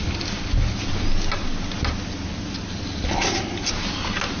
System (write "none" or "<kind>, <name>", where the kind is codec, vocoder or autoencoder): none